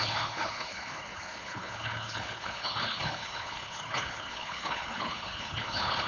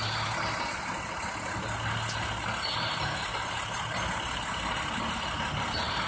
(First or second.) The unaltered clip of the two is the second